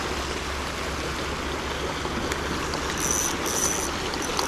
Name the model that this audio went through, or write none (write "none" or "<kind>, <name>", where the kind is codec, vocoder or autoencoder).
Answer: none